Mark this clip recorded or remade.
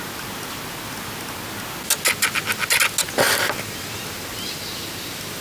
recorded